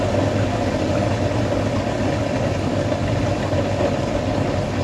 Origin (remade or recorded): recorded